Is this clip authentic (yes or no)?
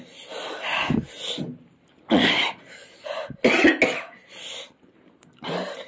yes